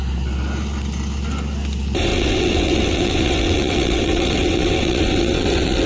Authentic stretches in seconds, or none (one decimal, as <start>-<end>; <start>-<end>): 0.0-2.1